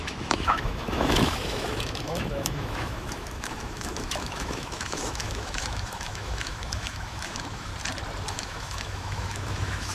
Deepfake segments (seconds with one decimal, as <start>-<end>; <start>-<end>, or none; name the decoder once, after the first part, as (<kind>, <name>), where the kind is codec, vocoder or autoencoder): 0.0-7.7 (autoencoder, DAC-VAE); 8.3-9.9

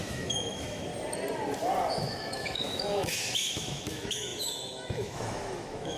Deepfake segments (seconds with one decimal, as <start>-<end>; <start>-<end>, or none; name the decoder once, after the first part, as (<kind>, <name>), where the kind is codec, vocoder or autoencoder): 0.0-0.9 (autoencoder, DAC-VAE); 1.9-6.0

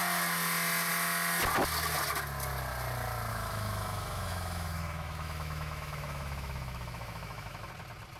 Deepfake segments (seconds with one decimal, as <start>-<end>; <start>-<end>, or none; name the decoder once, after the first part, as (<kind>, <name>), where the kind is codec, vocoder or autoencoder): 3.3-7.7 (autoencoder, DAC-VAE)

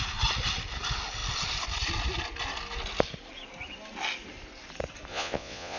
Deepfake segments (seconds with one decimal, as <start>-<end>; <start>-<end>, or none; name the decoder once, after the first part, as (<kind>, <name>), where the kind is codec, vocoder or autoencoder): 5.1-5.8 (vocoder, Vocos)

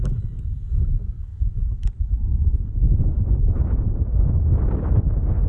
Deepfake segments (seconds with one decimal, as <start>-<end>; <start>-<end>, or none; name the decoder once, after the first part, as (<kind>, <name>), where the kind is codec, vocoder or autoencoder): 1.3-4.2 (vocoder, BigVGAN v2)